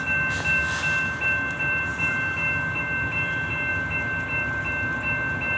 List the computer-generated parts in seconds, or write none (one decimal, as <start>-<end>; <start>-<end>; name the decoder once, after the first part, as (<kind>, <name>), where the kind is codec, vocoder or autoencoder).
none

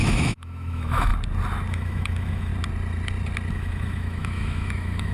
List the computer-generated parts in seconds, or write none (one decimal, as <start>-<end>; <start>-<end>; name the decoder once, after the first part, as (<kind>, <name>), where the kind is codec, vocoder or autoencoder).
0.0-1.1 (autoencoder, DAC-VAE); 1.7-2.5; 3.5-5.1

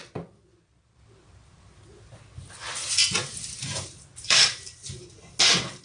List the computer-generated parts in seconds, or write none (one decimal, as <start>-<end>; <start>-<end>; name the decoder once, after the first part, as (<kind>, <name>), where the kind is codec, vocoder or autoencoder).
3.6-5.0 (vocoder, BigVGAN v2)